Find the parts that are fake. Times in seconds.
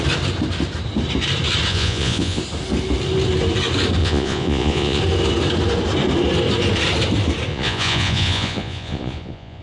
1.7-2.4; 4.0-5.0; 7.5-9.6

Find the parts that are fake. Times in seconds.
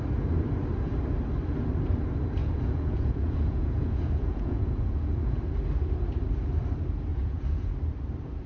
2.4-5.4; 7.1-7.7